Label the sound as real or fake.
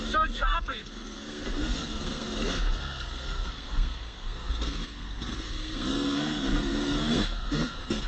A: fake